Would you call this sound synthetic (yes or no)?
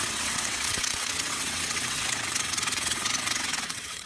yes